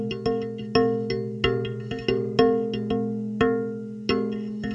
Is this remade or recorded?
recorded